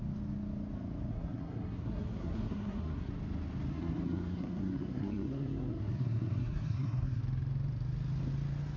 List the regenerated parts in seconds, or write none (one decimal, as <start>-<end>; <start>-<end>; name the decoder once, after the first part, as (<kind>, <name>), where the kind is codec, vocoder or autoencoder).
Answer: 1.1-3.1 (codec, SNAC); 3.7-7.2